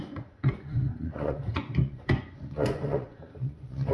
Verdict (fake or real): fake